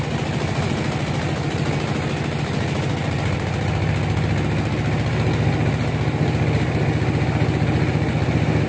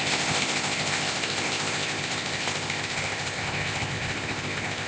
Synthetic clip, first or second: second